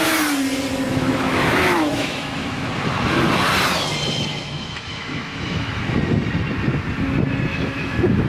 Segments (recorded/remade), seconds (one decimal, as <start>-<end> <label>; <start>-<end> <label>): 0.0-0.9 recorded; 0.9-2.7 remade; 2.7-4.3 recorded; 4.3-5.8 remade; 5.8-7.5 recorded; 7.5-8.3 remade

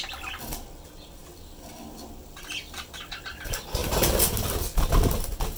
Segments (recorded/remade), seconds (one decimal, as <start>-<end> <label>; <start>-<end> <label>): 0.0-5.6 recorded

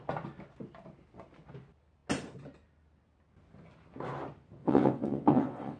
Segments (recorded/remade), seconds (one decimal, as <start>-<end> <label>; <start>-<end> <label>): 0.0-4.6 recorded; 4.6-5.8 remade

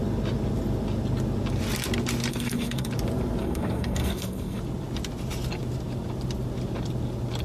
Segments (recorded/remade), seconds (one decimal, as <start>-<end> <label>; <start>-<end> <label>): 0.0-2.3 recorded; 2.3-2.9 remade; 2.9-3.4 recorded; 3.4-4.6 remade; 4.6-7.4 recorded